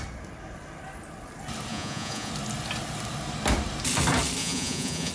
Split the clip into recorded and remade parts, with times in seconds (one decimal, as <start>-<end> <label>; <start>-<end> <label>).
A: 0.0-1.7 recorded; 1.7-2.3 remade; 2.3-4.4 recorded; 4.4-5.1 remade